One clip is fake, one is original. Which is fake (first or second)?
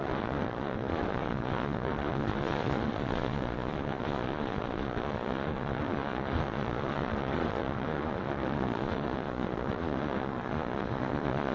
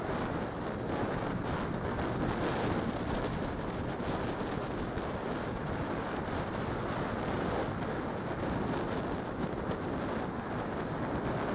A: first